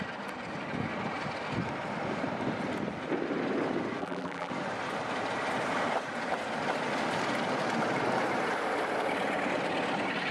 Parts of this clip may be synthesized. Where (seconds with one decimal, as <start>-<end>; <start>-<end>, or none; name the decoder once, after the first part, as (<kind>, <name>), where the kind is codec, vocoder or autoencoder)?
4.0-4.5 (vocoder, BigVGAN v2)